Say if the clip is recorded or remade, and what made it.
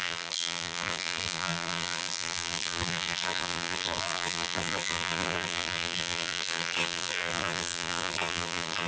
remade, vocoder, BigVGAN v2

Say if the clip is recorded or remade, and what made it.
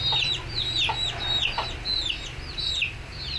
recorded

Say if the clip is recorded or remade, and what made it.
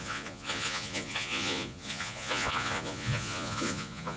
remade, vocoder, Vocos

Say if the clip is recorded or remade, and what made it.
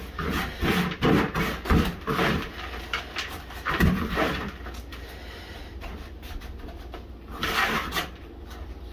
remade, vocoder, BigVGAN v2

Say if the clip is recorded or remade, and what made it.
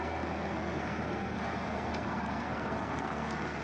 remade, codec, SNAC